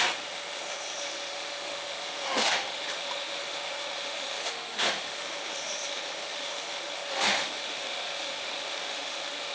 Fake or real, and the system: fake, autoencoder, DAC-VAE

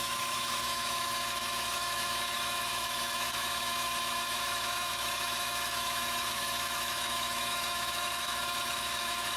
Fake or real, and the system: fake, autoencoder, DAC-VAE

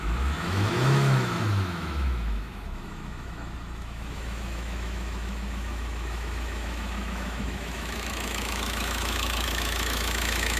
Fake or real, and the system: fake, autoencoder, DAC-VAE